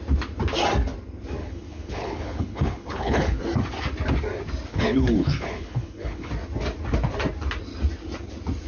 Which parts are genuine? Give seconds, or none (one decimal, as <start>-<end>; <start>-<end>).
0.0-1.4; 3.4-4.7; 6.3-8.7